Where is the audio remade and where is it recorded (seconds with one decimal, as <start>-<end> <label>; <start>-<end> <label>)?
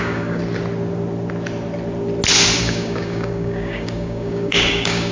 0.0-0.4 remade; 0.4-2.6 recorded; 2.6-5.1 remade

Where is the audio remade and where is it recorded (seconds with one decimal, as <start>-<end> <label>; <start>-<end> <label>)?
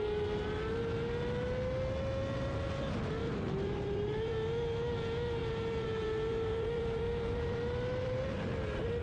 0.0-3.2 recorded; 3.2-4.3 remade; 4.3-5.4 recorded; 5.4-8.2 remade; 8.2-9.0 recorded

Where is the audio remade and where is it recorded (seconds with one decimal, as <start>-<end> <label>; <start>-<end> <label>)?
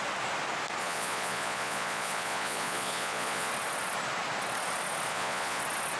0.0-0.8 recorded; 0.8-3.5 remade; 3.5-5.1 recorded; 5.1-5.6 remade; 5.6-6.0 recorded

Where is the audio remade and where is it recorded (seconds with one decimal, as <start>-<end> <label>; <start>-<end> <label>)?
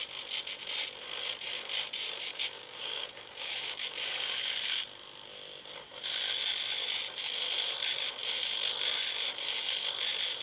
0.0-2.3 recorded; 2.3-4.7 remade; 4.7-10.4 recorded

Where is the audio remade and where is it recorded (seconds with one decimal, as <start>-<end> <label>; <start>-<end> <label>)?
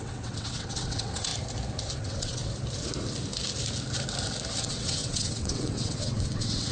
0.0-1.3 remade; 1.3-2.0 recorded; 2.0-2.4 remade; 2.4-4.6 recorded; 4.6-6.7 remade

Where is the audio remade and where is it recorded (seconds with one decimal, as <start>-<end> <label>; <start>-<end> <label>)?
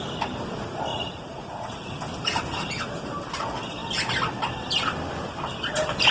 0.0-0.9 recorded; 0.9-1.7 remade; 1.7-6.1 recorded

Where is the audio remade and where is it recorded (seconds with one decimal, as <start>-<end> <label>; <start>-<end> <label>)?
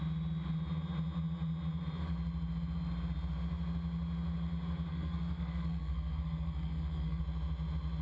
0.0-4.9 recorded; 4.9-7.2 remade; 7.2-8.0 recorded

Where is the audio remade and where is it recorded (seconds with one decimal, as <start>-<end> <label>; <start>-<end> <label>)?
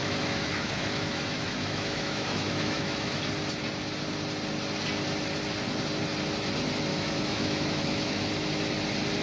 0.0-3.2 remade; 3.2-6.9 recorded; 6.9-8.3 remade; 8.3-9.2 recorded